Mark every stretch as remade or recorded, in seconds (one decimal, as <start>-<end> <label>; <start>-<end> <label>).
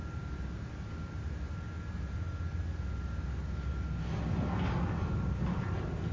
0.0-6.1 recorded